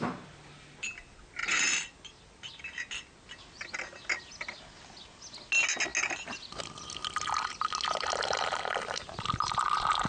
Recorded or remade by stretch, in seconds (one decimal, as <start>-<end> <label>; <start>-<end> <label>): 0.0-10.1 recorded